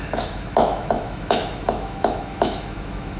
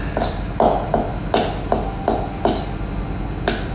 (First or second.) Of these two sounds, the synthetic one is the first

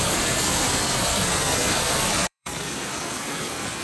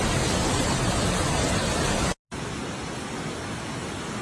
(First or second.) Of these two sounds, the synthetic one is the first